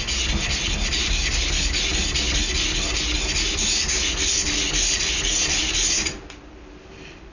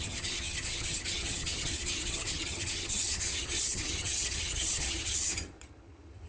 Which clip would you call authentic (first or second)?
first